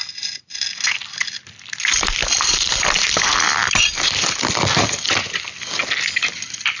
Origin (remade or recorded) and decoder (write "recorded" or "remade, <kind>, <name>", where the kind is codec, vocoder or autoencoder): recorded